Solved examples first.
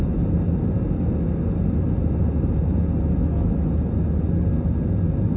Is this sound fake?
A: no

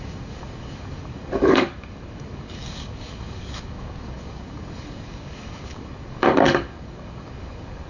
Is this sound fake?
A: yes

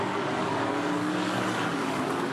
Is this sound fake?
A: yes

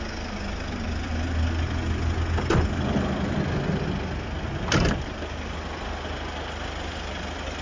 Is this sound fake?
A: no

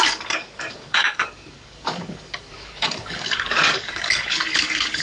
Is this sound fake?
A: yes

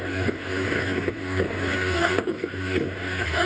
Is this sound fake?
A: yes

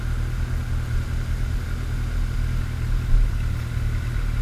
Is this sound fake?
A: no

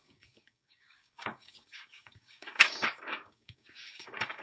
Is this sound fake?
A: yes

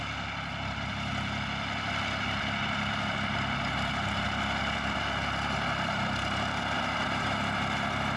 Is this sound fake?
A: no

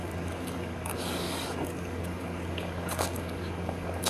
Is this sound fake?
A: yes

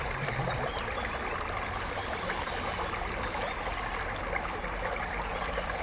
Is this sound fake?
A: no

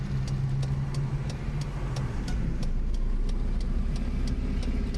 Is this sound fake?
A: no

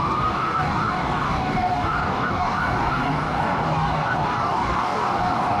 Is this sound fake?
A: yes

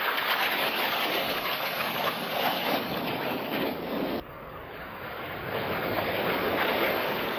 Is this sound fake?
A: yes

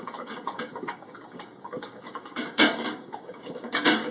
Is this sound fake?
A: yes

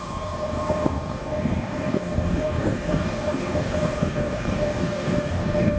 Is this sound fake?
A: yes